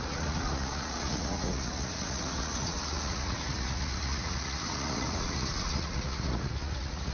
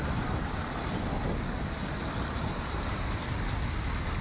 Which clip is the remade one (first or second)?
first